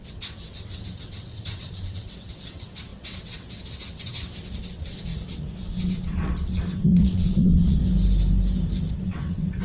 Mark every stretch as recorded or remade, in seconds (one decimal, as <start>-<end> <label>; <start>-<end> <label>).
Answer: 0.0-7.8 remade; 7.8-8.9 recorded; 8.9-9.6 remade